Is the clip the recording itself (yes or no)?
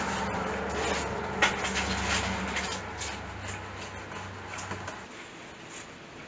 yes